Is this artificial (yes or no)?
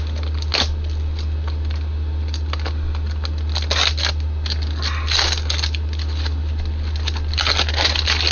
no